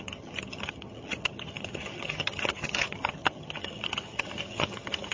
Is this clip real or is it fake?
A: fake